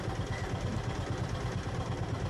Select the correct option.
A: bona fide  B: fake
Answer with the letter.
A